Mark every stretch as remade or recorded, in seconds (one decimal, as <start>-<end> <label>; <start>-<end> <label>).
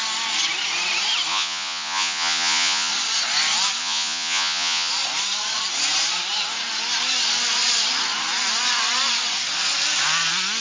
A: 0.0-1.3 recorded; 1.3-2.9 remade; 2.9-3.8 recorded; 3.8-4.9 remade; 4.9-10.6 recorded